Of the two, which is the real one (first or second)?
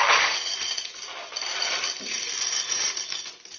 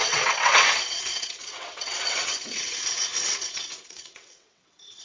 first